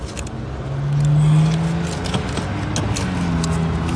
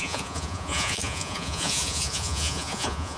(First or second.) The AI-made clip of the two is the second